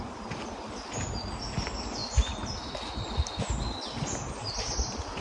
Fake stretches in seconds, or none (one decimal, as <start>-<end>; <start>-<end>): none